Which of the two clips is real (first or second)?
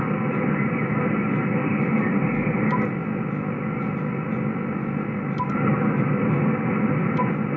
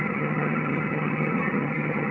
first